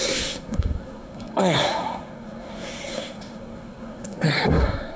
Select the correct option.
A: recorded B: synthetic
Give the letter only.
B